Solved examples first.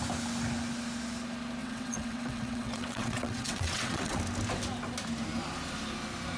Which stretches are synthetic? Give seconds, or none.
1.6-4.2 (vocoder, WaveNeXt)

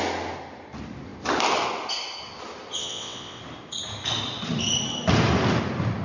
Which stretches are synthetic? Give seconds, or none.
2.8-3.4 (vocoder, WaveNeXt)

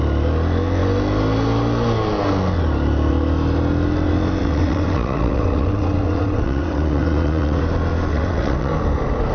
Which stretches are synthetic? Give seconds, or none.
4.4-7.6 (vocoder, WaveNeXt); 8.1-8.7

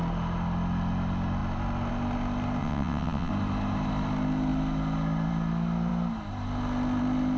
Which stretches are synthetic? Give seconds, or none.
2.6-3.3 (vocoder, WaveNeXt)

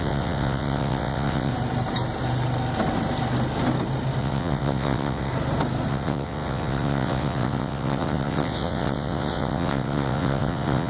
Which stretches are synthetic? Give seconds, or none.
0.0-1.5 (vocoder, WaveNeXt); 4.2-5.3; 5.9-10.9